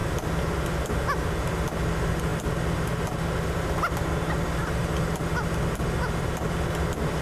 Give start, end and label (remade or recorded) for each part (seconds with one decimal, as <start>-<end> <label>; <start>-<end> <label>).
0.0-7.2 recorded

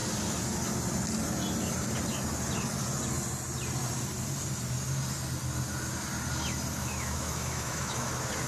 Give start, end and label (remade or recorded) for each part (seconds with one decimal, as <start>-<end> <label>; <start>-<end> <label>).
0.0-6.8 recorded; 6.8-8.1 remade; 8.1-8.5 recorded